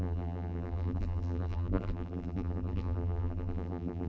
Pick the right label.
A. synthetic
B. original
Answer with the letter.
A